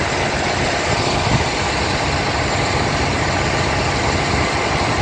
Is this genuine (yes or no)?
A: yes